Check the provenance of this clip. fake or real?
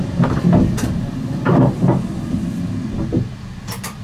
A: real